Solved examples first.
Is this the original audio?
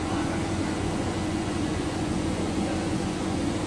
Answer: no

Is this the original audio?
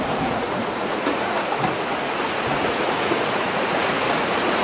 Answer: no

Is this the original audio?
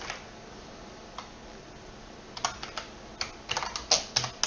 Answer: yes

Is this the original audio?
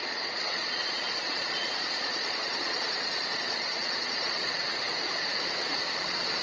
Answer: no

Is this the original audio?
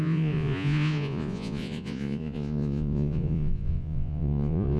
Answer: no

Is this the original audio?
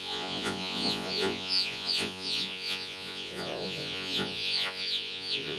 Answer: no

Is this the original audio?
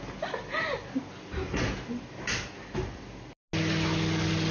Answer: yes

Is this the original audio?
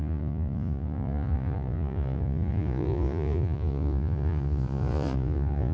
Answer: no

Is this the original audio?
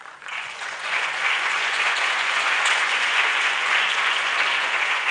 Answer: no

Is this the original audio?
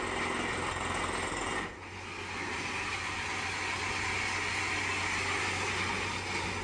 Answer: yes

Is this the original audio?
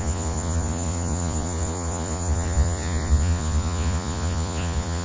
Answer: no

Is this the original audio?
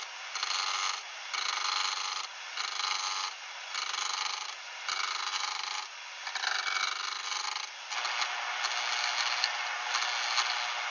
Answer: yes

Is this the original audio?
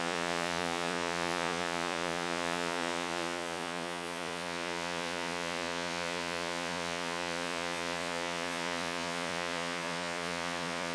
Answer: no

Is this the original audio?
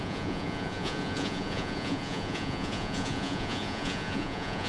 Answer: no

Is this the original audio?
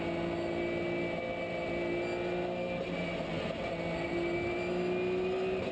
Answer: yes